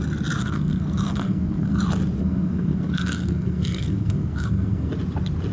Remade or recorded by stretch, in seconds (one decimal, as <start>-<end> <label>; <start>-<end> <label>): 0.0-0.4 recorded; 0.4-1.8 remade; 1.8-2.2 recorded; 2.2-4.9 remade; 4.9-5.5 recorded